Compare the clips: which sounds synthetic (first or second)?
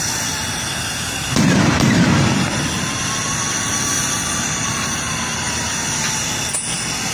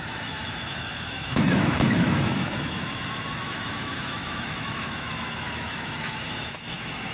second